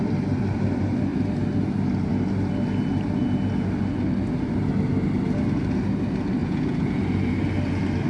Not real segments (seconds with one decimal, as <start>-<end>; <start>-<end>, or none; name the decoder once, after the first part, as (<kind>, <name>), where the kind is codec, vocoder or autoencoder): 6.4-7.0 (vocoder, Vocos)